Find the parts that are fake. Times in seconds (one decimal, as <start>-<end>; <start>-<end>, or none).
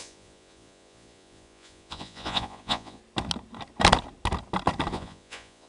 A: 0.0-3.0; 4.9-5.7